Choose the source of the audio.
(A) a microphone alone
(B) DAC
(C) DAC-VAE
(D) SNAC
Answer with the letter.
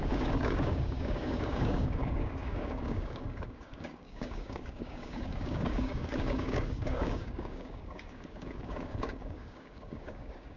B